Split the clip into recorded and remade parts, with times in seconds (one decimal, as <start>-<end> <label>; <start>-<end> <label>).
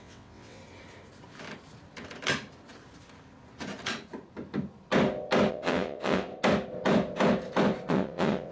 0.0-0.6 remade; 0.6-5.5 recorded; 5.5-6.3 remade; 6.3-7.9 recorded; 7.9-8.5 remade